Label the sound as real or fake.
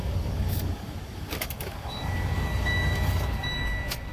fake